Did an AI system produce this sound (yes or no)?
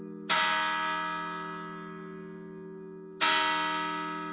no